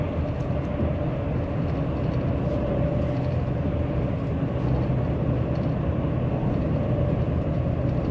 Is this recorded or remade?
recorded